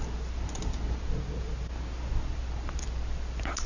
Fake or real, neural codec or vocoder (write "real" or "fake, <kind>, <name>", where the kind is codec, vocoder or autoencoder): real